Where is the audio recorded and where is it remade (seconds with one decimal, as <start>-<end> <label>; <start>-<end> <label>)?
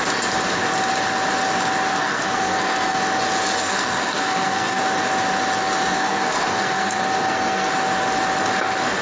0.0-1.9 recorded; 1.9-3.0 remade; 3.0-3.6 recorded; 3.6-4.8 remade; 4.8-5.9 recorded; 5.9-7.7 remade; 7.7-9.0 recorded